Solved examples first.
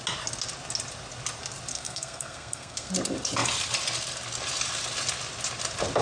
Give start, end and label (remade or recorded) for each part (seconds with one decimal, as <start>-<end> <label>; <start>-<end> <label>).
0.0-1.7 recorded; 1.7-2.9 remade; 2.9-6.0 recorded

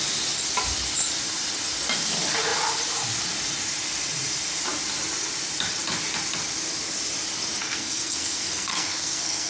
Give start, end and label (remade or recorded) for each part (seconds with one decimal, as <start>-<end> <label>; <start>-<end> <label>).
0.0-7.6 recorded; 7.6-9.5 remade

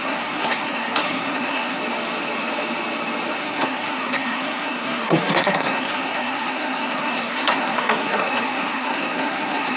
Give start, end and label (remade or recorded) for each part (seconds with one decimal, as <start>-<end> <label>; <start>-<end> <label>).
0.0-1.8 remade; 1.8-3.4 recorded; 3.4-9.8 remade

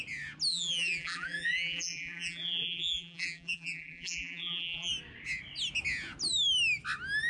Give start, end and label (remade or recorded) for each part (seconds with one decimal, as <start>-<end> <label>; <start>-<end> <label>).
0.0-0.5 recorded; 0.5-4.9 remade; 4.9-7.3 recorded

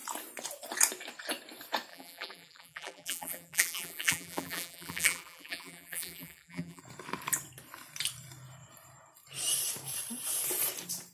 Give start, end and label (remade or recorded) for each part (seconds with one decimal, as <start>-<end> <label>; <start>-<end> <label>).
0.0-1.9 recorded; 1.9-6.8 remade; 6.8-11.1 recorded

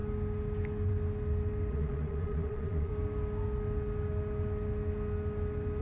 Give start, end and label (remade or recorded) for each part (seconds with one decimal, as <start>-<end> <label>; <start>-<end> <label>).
0.0-1.7 recorded; 1.7-2.9 remade; 2.9-5.8 recorded

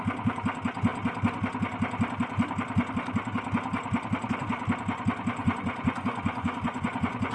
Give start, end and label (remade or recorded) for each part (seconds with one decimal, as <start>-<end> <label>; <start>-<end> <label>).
0.0-5.4 recorded; 5.4-7.3 remade

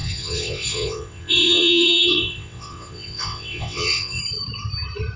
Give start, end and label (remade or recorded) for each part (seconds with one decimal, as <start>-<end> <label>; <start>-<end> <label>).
0.0-4.2 remade; 4.2-5.2 recorded